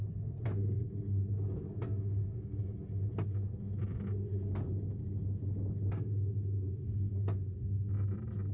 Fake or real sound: real